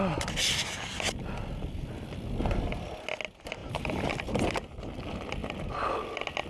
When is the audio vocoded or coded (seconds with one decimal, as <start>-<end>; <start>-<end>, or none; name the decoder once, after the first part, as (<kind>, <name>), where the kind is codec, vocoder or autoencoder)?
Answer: none